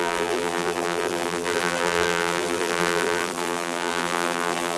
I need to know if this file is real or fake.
fake